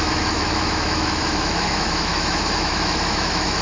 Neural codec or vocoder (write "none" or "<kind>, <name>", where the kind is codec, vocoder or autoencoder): autoencoder, DAC-VAE